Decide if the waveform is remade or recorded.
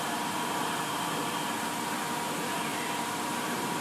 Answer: remade